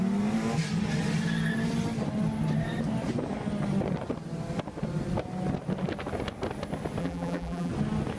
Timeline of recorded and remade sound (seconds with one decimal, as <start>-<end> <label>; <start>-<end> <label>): 0.0-7.0 recorded; 7.0-7.7 remade; 7.7-8.2 recorded